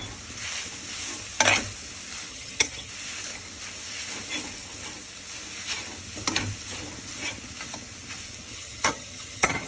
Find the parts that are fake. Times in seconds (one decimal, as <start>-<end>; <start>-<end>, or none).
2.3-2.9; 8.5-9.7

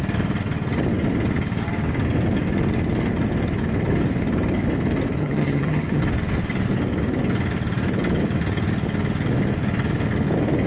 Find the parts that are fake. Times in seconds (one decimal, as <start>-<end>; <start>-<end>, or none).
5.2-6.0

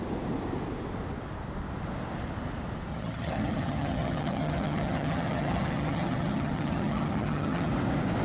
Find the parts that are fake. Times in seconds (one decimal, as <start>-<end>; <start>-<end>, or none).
2.9-7.7

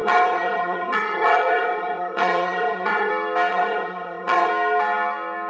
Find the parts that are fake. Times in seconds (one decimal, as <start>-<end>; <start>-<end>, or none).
0.0-3.1; 3.5-4.5